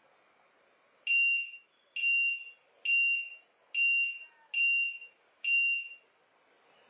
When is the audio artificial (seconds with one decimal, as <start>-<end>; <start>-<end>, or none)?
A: none